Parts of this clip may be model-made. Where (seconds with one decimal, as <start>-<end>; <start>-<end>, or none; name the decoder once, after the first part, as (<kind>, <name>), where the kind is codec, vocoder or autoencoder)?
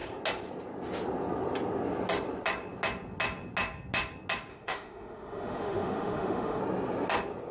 4.5-6.6 (autoencoder, DAC-VAE)